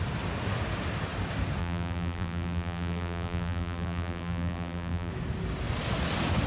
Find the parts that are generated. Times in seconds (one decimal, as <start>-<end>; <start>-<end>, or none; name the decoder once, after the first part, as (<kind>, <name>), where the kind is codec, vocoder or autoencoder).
1.6-5.1 (vocoder, BigVGAN v2)